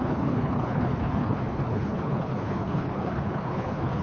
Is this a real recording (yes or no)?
no